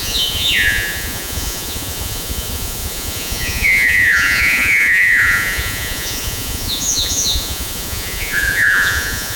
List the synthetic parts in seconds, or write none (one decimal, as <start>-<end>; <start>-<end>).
0.0-9.4